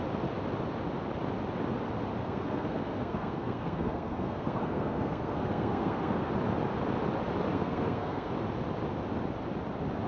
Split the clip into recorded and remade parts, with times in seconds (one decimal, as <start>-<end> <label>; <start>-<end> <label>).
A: 0.0-2.2 recorded; 2.2-6.3 remade; 6.3-7.5 recorded; 7.5-8.3 remade; 8.3-10.1 recorded